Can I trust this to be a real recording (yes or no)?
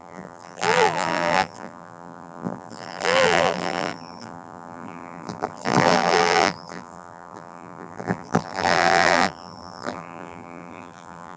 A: no